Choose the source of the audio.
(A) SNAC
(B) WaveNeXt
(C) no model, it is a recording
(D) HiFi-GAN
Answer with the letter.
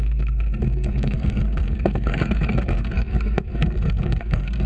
A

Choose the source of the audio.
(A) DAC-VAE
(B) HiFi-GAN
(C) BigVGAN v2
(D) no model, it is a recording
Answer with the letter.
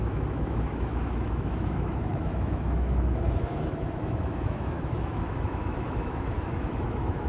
A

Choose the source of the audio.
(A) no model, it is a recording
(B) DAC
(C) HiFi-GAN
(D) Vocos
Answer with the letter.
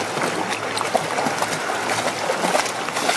A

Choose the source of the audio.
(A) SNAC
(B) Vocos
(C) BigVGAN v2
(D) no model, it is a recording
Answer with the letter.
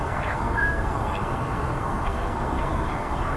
A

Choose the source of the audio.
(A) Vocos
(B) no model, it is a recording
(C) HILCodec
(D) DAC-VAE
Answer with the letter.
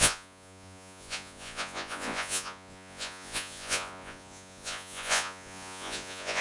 A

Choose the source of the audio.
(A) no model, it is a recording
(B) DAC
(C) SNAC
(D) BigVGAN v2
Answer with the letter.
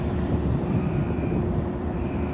D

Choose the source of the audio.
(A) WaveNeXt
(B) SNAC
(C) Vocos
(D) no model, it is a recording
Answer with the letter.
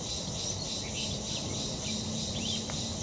D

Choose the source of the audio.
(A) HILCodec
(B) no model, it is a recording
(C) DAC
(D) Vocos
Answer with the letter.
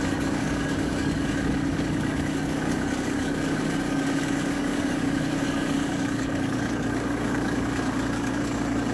C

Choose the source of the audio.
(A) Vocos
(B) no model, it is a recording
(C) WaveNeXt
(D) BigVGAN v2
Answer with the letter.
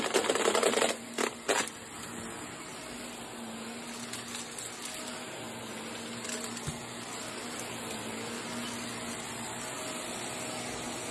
B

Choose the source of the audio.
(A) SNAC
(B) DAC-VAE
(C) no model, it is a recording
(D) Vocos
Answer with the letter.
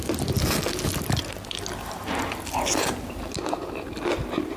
C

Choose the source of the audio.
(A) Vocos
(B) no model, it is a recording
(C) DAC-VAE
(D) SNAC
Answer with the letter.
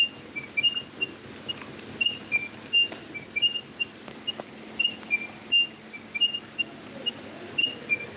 B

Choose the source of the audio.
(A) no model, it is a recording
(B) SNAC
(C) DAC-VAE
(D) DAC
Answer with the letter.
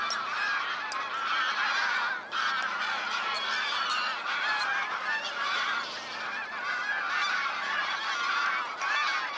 A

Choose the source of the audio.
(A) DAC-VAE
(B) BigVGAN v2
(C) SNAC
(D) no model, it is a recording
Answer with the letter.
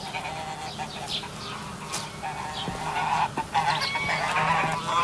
D